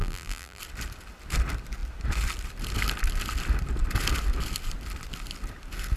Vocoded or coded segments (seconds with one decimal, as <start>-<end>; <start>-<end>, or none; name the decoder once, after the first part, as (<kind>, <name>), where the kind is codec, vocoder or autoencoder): 0.0-0.6 (vocoder, BigVGAN v2)